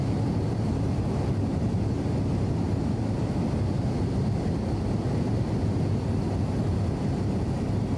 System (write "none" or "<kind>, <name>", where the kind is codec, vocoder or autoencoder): none